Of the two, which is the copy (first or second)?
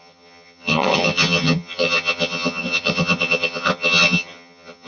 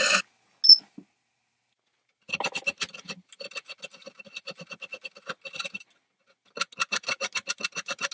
first